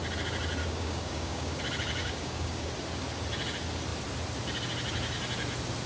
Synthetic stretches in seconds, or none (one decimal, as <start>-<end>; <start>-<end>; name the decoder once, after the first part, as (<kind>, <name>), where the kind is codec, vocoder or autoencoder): 0.6-1.6 (codec, DAC); 2.0-2.7